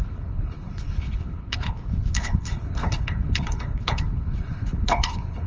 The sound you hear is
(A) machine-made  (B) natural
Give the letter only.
A